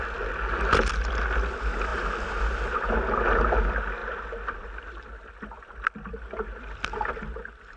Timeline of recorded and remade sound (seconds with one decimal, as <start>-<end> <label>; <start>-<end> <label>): 0.0-7.8 recorded